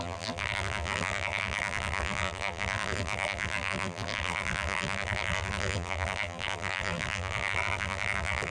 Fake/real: fake